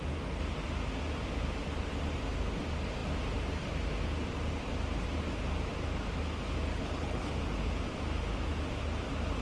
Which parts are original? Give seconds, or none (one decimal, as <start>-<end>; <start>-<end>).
0.0-6.7; 7.3-9.4